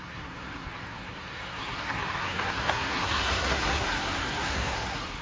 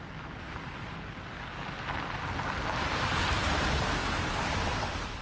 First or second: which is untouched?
second